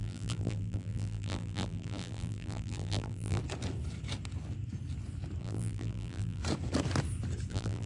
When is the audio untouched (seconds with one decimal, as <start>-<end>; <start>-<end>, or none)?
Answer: 3.4-5.4; 6.4-7.5

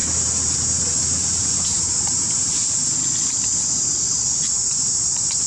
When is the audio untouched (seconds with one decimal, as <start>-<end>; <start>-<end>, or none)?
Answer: 0.0-1.4; 2.6-4.9